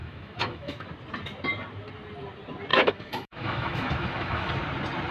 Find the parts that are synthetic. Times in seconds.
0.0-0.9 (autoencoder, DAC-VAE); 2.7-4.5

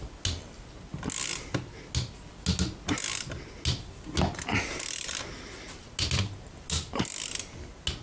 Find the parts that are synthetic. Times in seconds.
none

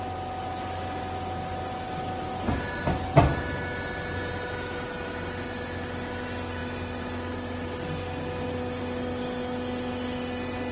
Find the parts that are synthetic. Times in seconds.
none

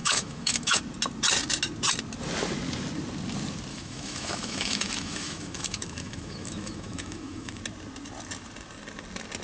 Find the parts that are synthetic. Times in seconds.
0.0-0.8 (autoencoder, DAC-VAE); 3.7-7.6